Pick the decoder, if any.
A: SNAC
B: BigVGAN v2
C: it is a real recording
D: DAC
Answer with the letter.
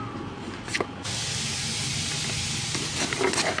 C